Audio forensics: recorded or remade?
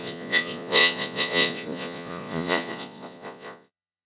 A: remade